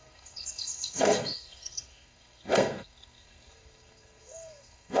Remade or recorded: remade